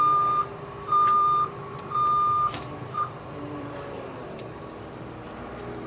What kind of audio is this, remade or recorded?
remade